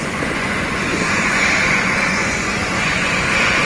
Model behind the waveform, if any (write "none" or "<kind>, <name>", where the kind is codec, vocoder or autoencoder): vocoder, Vocos